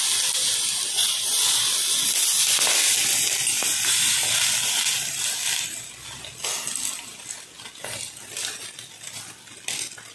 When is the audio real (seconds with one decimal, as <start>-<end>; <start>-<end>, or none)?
0.0-10.1